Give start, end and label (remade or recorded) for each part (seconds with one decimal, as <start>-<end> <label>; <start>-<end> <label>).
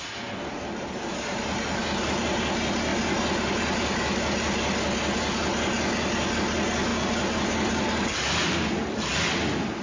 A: 0.0-9.8 recorded